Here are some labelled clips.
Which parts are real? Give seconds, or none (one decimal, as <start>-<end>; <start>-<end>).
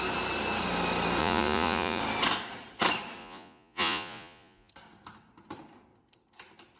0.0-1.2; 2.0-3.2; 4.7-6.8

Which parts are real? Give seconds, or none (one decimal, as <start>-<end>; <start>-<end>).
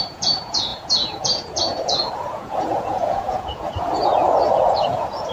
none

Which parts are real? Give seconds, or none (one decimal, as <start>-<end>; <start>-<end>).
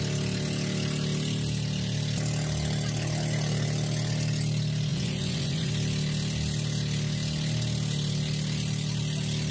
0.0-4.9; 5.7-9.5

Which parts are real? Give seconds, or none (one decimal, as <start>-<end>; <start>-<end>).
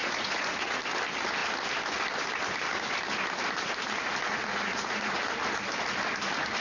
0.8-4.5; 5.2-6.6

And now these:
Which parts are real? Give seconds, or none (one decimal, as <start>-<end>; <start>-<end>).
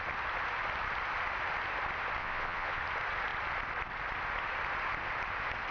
0.0-2.2; 2.8-5.7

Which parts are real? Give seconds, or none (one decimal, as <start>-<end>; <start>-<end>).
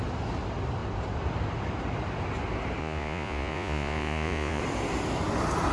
0.0-2.8; 4.6-5.7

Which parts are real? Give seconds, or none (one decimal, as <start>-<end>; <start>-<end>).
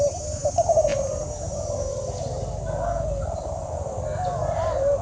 0.0-5.0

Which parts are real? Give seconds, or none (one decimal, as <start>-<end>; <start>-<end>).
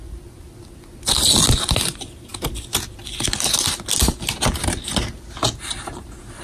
0.0-6.4